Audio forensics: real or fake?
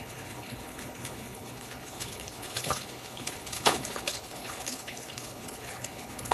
fake